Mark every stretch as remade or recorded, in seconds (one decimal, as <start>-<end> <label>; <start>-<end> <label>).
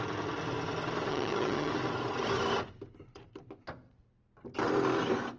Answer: 0.0-1.1 recorded; 1.1-1.7 remade; 1.7-5.4 recorded